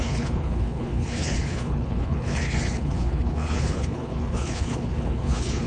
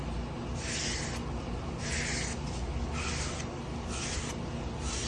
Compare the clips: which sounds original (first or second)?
second